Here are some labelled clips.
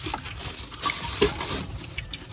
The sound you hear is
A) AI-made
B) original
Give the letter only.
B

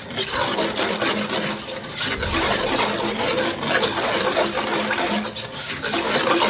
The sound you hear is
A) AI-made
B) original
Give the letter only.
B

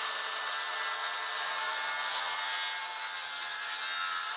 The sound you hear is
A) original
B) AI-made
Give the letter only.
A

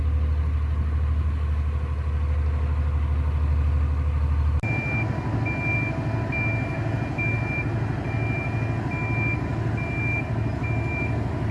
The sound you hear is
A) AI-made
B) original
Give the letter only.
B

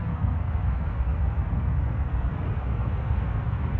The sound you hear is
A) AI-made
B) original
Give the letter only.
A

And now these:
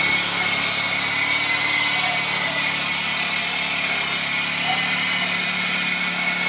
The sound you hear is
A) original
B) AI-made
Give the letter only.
A